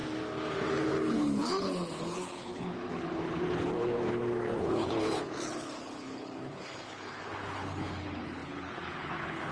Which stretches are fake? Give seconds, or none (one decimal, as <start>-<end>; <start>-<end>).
0.7-9.5

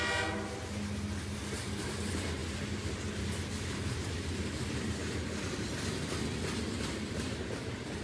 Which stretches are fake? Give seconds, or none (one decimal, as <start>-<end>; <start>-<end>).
none

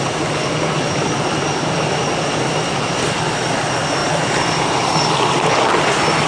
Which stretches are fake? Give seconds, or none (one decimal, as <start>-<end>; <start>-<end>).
none

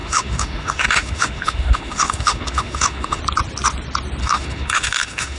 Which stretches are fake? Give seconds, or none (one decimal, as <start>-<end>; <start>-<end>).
0.0-3.2; 4.2-5.4

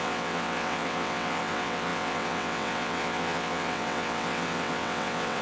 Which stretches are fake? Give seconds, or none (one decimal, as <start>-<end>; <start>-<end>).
0.0-5.4